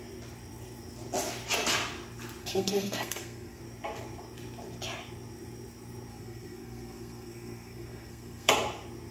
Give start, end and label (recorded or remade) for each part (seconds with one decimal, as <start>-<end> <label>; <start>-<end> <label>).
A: 0.0-2.4 recorded; 2.4-3.6 remade; 3.6-6.1 recorded; 6.1-8.5 remade; 8.5-9.1 recorded